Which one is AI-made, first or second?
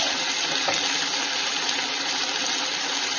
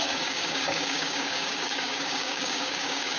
second